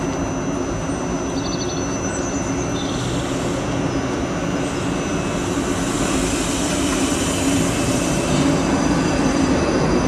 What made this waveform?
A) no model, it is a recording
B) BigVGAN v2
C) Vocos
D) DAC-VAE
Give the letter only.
A